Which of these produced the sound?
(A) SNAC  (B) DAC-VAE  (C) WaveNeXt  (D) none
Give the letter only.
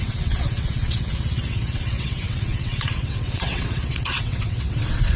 C